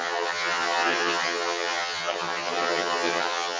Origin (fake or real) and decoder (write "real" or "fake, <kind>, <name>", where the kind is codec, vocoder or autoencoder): fake, vocoder, HiFi-GAN